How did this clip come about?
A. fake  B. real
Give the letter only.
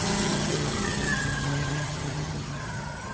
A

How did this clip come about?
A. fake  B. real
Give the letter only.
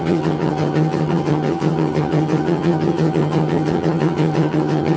A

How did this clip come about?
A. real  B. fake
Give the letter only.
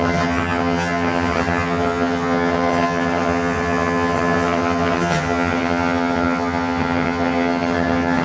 B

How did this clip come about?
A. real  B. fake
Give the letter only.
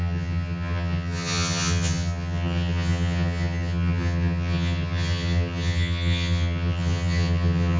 B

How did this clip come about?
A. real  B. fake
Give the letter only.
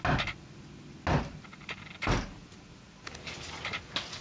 A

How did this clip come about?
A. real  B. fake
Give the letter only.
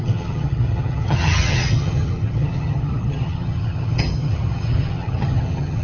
B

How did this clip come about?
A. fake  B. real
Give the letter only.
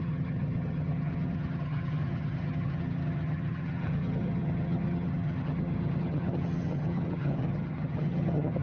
A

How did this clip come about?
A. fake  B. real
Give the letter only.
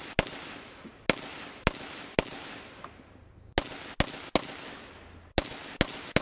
B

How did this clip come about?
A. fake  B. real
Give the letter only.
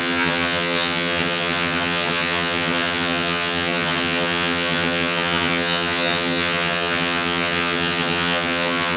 A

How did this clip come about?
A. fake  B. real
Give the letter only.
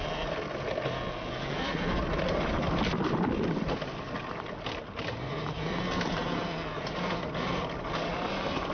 B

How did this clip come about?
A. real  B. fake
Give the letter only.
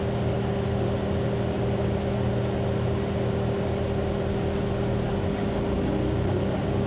A